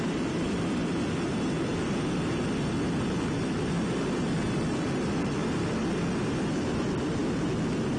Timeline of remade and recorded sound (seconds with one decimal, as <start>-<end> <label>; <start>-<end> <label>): 0.0-7.2 remade; 7.2-8.0 recorded

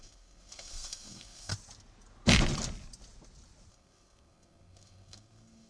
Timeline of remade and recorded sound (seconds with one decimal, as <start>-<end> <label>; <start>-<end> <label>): 0.0-1.5 remade; 1.5-3.7 recorded; 3.7-5.7 remade

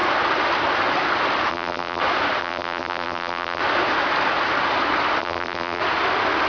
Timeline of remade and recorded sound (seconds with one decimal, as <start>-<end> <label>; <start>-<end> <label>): 0.0-1.5 recorded; 1.5-2.0 remade; 2.0-2.4 recorded; 2.4-3.6 remade; 3.6-5.2 recorded; 5.2-5.8 remade; 5.8-6.5 recorded